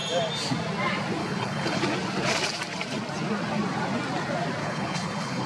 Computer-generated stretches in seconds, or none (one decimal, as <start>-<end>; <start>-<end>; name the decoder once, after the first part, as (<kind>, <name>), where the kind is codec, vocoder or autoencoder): 1.2-1.8 (codec, HILCodec); 4.6-5.5